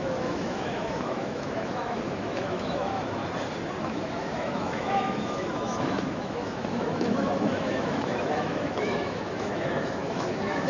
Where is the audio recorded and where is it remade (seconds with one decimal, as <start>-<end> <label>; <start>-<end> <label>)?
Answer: 0.0-3.2 remade; 3.2-3.8 recorded; 3.8-10.7 remade